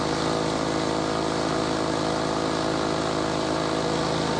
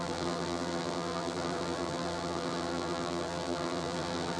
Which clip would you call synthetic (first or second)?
second